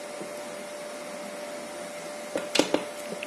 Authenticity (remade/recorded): recorded